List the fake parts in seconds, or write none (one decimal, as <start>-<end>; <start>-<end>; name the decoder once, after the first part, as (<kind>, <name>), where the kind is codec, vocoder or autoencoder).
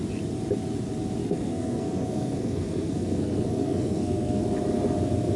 1.2-4.4 (codec, SNAC)